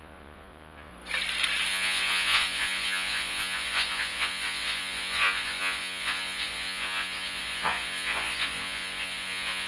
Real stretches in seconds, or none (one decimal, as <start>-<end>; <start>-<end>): 0.9-1.7